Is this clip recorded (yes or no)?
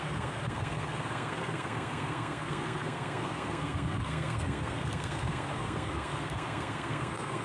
no